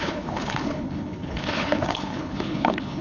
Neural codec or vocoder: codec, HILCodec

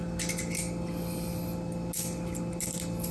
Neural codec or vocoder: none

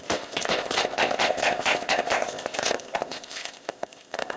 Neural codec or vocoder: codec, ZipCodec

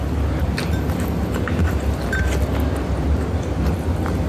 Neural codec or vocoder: none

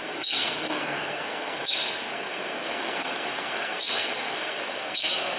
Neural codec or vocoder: codec, SNAC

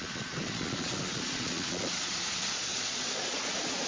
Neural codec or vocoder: vocoder, Vocos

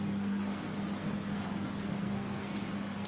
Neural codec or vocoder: codec, SNAC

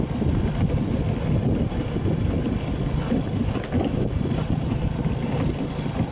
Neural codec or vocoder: none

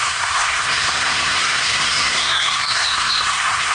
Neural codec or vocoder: codec, SNAC